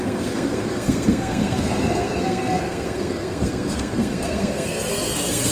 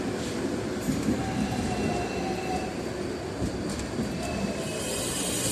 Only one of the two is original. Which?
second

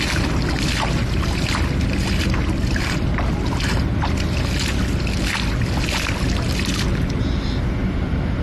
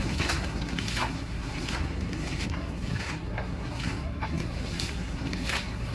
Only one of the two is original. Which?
first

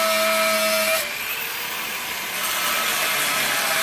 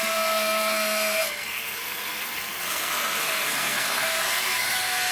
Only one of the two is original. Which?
first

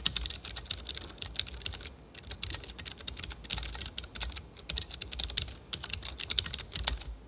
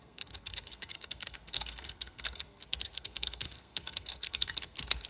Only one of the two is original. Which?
first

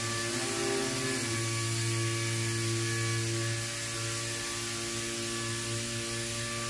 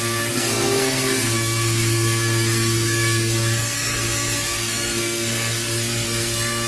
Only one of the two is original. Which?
first